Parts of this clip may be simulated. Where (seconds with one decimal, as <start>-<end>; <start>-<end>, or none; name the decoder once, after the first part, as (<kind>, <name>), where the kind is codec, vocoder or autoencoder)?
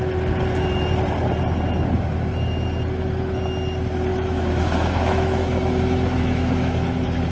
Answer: 4.1-7.3 (autoencoder, DAC-VAE)